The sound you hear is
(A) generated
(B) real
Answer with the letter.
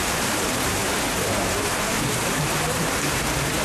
A